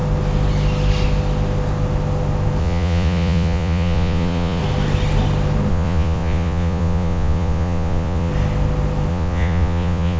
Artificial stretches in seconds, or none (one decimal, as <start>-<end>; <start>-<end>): 2.6-4.6; 5.7-8.3; 9.1-10.2